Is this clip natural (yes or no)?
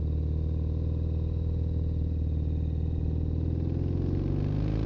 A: yes